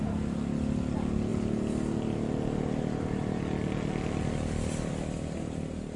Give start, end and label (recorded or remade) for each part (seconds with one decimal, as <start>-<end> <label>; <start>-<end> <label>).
0.0-6.0 recorded